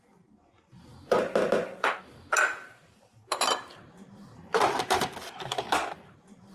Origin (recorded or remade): remade